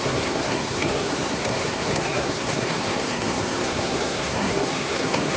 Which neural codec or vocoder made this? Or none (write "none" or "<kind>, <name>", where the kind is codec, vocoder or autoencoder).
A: codec, SNAC